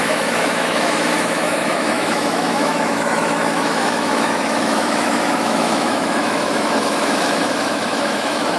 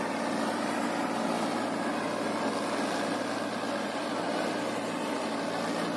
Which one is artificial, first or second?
first